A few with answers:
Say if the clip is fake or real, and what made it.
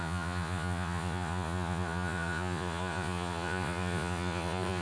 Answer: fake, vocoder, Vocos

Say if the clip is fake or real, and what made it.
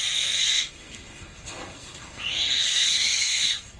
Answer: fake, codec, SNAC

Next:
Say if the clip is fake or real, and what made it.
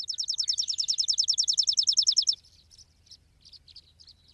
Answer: real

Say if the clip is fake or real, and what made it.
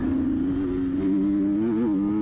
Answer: real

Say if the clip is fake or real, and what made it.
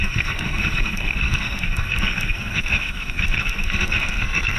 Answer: fake, codec, SNAC